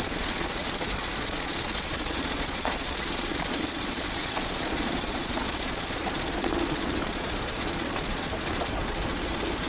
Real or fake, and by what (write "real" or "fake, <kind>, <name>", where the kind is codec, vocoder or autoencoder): fake, vocoder, Vocos